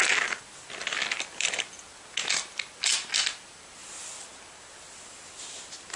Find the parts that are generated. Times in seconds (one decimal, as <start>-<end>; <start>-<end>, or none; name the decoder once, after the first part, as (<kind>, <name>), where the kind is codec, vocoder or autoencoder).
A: none